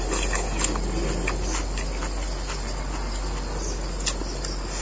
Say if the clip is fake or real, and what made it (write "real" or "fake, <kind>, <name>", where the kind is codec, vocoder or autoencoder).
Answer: real